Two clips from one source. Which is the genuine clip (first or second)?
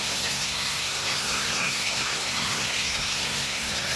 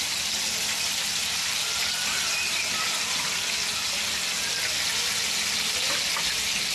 second